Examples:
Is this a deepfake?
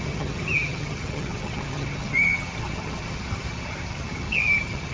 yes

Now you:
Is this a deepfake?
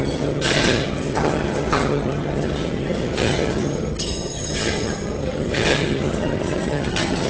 yes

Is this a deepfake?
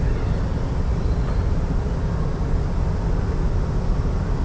no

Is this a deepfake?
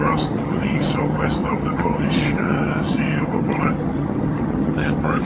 yes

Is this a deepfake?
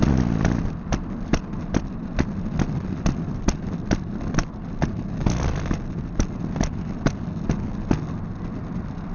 no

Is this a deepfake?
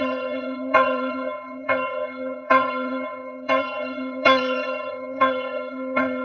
yes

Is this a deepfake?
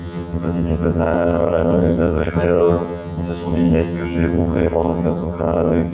yes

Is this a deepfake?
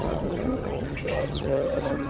yes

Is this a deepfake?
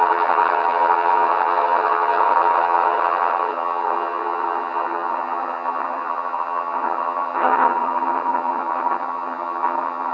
yes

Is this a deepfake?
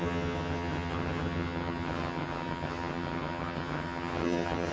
yes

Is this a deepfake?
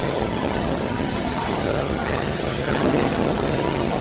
yes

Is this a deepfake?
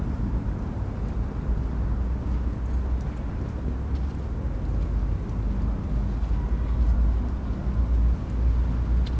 no